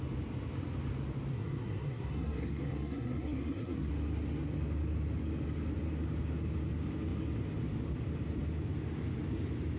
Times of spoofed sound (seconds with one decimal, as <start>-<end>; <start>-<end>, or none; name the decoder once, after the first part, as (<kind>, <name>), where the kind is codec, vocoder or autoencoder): 1.3-3.9 (codec, SNAC)